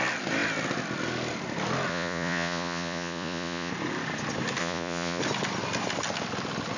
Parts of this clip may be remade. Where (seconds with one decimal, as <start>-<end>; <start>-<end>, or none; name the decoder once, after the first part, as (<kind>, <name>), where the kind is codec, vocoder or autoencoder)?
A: 1.9-3.7 (vocoder, Vocos); 4.6-5.2

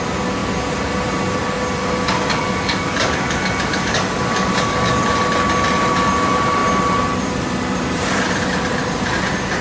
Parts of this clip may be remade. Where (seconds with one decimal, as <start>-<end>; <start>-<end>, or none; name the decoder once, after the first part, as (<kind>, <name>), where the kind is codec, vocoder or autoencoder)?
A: 1.8-5.1 (codec, DAC)

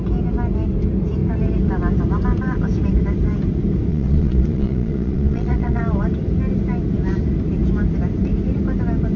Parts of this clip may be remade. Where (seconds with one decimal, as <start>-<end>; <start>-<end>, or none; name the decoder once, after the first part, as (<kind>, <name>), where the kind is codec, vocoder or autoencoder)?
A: 3.9-5.8 (vocoder, Vocos)

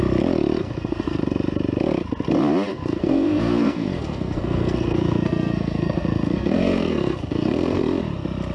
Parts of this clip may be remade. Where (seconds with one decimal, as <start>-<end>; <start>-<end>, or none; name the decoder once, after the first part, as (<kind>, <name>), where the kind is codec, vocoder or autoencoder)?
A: 0.6-1.2 (codec, SNAC); 2.7-7.8